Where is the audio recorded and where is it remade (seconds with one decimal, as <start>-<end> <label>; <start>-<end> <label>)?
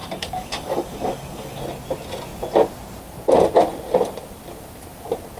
0.0-1.6 remade; 1.6-5.4 recorded